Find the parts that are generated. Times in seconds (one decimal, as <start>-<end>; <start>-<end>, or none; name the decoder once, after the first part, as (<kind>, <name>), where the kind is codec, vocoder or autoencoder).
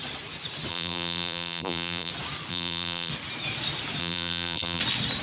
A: 0.7-2.1 (vocoder, BigVGAN v2); 2.5-3.1; 4.0-4.8